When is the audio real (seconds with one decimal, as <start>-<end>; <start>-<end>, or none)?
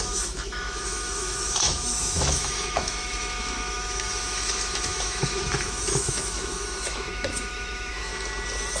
8.1-8.8